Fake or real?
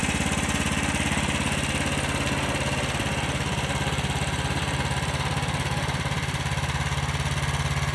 real